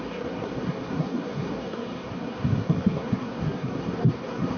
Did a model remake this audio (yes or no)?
yes